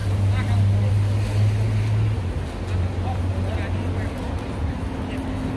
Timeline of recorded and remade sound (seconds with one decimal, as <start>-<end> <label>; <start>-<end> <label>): 0.0-5.6 recorded